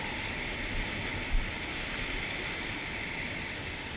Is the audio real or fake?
real